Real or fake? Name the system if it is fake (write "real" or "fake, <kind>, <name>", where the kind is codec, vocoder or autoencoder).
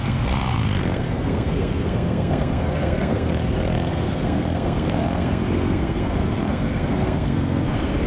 fake, codec, SNAC